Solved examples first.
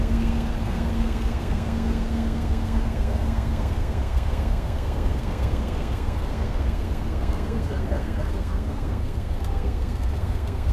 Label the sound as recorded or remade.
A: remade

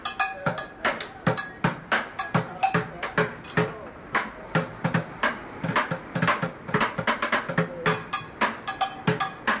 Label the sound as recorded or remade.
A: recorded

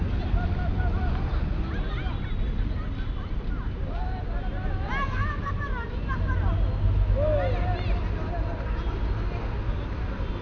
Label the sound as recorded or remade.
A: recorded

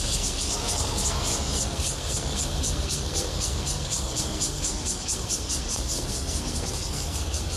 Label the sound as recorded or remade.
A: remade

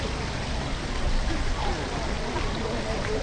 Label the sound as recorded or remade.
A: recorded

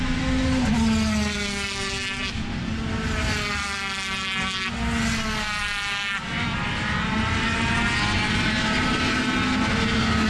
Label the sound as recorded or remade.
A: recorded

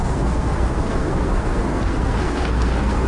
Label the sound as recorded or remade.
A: remade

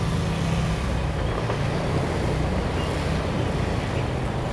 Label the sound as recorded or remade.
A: recorded